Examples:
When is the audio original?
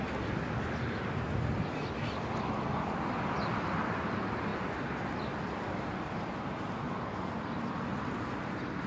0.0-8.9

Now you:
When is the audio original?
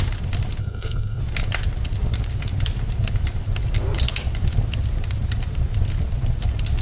0.0-0.6; 1.2-6.8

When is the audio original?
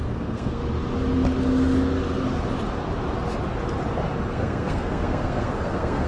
0.6-4.3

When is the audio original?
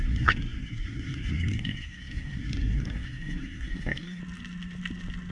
4.2-5.3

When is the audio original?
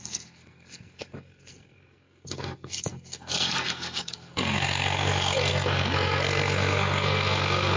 none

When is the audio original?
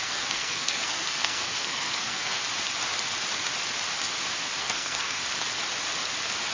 2.4-4.6; 5.2-6.5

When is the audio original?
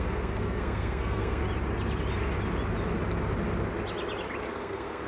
1.4-4.5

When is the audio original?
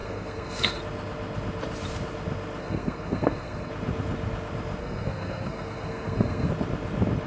0.8-2.6; 3.7-4.8; 6.5-7.3